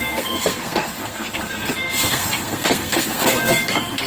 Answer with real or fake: fake